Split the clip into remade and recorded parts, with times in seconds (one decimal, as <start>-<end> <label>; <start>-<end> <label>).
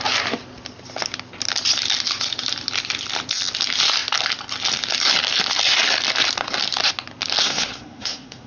0.0-7.4 recorded; 7.4-8.5 remade